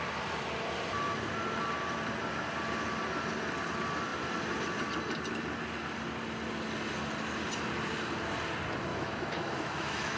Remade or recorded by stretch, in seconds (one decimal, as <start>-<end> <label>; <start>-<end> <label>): 0.0-8.9 recorded; 8.9-10.2 remade